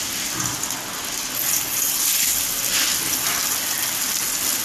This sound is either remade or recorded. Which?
recorded